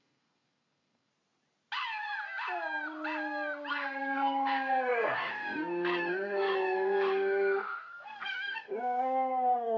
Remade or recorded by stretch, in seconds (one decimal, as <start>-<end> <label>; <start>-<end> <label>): 0.0-1.1 remade; 1.1-3.7 recorded; 3.7-9.8 remade